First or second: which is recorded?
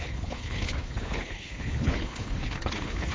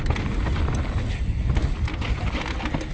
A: second